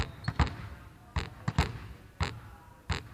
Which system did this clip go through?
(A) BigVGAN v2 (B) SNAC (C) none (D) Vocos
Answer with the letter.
C